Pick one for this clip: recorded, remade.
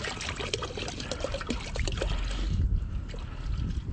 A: recorded